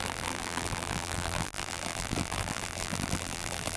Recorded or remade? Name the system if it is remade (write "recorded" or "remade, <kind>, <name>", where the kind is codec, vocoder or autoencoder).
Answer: remade, vocoder, BigVGAN v2